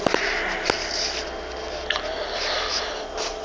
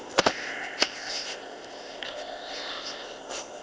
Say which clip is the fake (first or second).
second